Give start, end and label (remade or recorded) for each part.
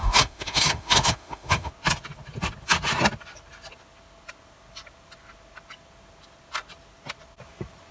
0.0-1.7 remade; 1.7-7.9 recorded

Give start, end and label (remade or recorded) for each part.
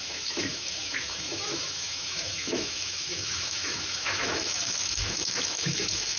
0.0-6.2 remade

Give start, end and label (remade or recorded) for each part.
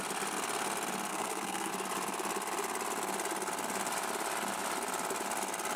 0.0-1.1 recorded; 1.1-1.7 remade; 1.7-5.8 recorded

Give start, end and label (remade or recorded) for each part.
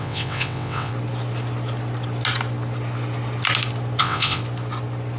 0.0-0.9 remade; 0.9-4.0 recorded; 4.0-4.4 remade; 4.4-5.2 recorded